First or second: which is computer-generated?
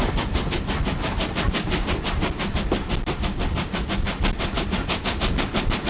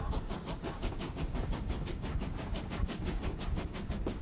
second